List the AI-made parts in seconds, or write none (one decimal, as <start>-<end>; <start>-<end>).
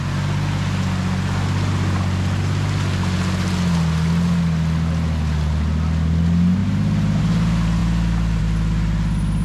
6.6-7.2